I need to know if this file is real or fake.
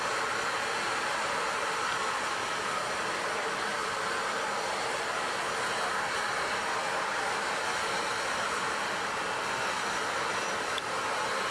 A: real